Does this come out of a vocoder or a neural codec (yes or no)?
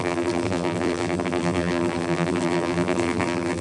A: yes